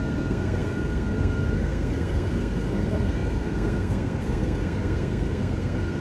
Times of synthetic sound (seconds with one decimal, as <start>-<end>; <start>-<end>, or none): 0.0-6.0